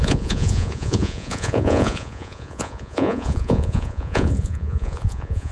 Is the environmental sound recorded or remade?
remade